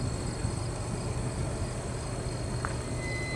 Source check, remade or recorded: recorded